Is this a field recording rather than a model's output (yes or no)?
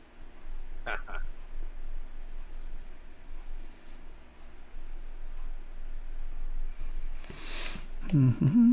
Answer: yes